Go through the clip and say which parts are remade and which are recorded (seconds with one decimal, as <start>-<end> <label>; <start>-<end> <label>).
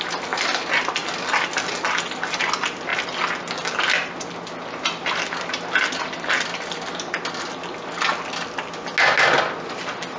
0.0-10.2 recorded